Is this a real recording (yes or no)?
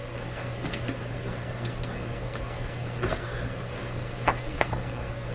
no